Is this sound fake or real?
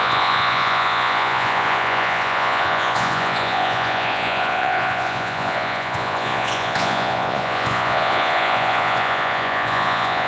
fake